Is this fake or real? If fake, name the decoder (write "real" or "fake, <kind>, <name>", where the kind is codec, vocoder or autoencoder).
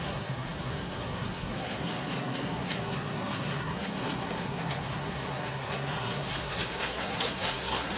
fake, codec, SNAC